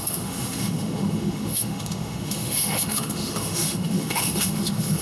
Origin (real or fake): fake